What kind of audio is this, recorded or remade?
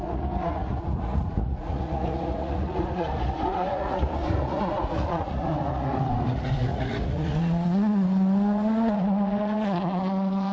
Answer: remade